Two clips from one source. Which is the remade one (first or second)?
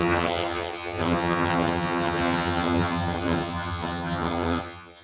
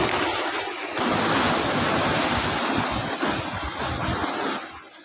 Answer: first